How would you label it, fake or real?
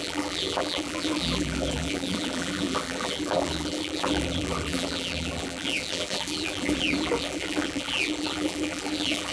fake